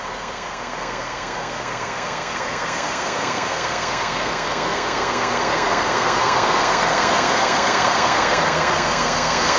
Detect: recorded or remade remade